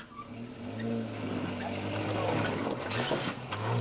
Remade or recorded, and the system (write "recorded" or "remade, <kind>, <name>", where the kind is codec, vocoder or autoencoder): recorded